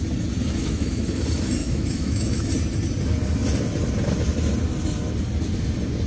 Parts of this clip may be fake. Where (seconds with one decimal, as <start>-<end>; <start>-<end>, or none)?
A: 0.6-1.2; 1.6-2.5